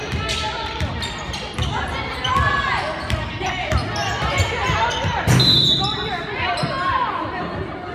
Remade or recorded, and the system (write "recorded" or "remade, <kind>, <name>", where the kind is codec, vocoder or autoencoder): recorded